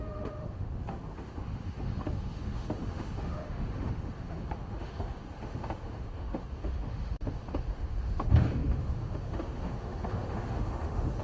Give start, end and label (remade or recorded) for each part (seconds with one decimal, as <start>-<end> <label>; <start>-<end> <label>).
0.0-11.2 remade